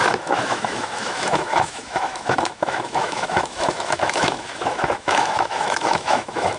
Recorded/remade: remade